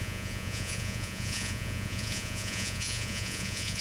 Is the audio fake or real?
fake